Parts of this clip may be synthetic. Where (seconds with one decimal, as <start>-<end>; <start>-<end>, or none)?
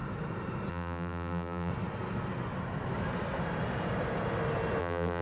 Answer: 0.7-1.7; 4.8-5.2